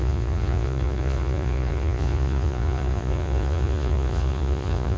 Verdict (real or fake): fake